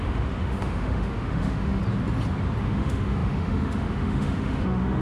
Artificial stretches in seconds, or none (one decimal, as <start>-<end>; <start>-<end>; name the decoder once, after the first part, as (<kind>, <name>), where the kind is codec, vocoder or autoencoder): 0.0-1.8 (autoencoder, DAC-VAE); 2.6-5.0